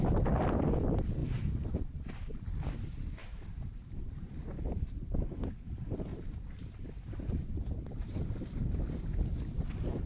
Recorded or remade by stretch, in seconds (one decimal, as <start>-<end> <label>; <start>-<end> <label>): 0.0-1.2 recorded; 1.2-2.3 remade; 2.3-3.2 recorded; 3.2-4.0 remade; 4.0-6.1 recorded; 6.1-8.2 remade; 8.2-10.1 recorded